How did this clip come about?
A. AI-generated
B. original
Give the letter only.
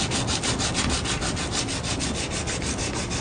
B